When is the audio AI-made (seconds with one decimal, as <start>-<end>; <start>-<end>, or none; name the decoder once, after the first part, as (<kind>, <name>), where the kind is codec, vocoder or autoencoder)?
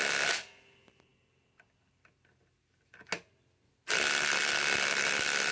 none